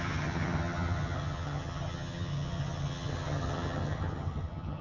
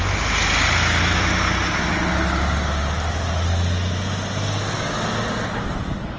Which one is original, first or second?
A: second